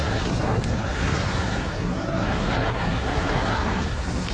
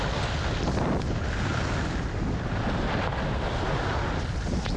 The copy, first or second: first